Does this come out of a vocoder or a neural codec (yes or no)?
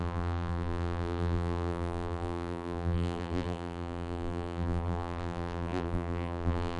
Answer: yes